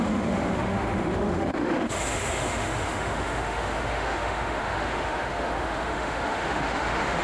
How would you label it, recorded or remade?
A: remade